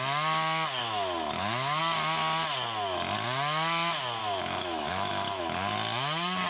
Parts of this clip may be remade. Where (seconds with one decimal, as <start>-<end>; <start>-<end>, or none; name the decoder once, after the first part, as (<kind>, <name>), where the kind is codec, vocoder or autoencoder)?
0.8-1.8 (autoencoder, DAC-VAE); 4.2-5.4